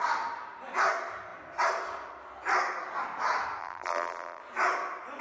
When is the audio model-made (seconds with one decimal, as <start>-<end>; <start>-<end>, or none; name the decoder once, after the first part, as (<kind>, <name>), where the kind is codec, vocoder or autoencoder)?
3.6-4.4 (vocoder, BigVGAN v2)